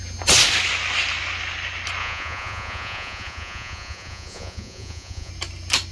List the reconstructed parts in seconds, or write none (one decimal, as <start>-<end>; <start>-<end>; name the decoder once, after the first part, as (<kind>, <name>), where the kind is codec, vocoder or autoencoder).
2.0-5.3 (vocoder, Vocos)